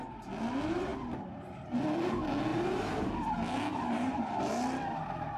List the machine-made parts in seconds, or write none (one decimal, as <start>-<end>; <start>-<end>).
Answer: 2.5-3.1; 3.7-4.5